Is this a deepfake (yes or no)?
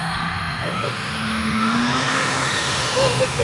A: yes